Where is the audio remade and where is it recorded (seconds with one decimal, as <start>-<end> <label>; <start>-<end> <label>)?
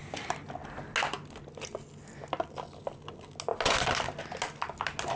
0.0-5.2 recorded